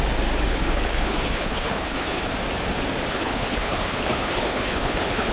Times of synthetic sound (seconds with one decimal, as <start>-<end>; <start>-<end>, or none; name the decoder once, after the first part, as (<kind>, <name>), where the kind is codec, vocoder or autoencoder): 0.5-2.3 (codec, HILCodec); 3.1-5.3